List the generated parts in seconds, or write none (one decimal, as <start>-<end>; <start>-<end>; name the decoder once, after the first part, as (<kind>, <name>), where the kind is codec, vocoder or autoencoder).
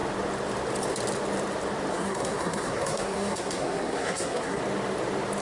1.9-4.6 (codec, SNAC)